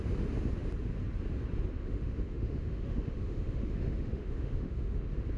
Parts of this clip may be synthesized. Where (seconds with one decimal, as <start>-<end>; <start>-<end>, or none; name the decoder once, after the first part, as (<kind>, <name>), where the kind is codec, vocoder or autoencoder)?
1.8-5.0 (autoencoder, DAC-VAE)